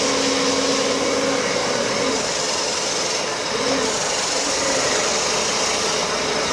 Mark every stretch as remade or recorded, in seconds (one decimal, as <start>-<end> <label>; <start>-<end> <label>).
0.0-6.5 recorded